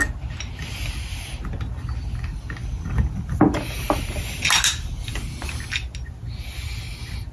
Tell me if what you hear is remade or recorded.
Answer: recorded